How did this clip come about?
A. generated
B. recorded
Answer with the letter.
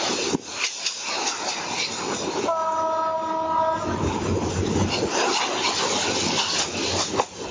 B